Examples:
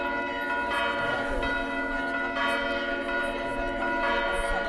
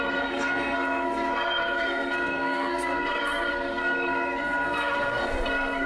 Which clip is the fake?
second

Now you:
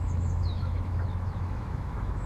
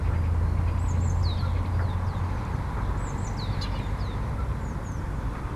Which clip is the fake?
first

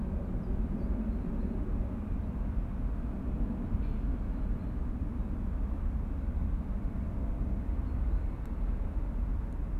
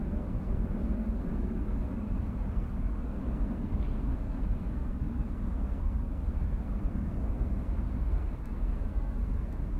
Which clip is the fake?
second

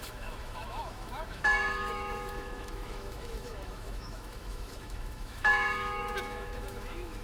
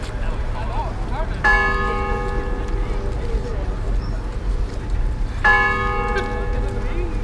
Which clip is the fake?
first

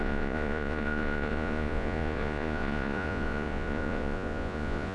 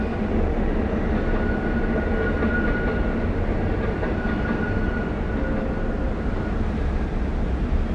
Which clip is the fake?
first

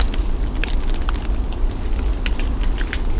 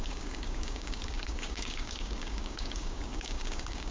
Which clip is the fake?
second